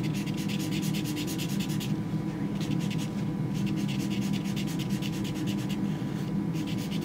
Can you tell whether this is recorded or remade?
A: recorded